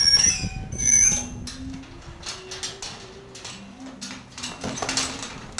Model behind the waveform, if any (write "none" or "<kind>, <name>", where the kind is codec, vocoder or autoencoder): none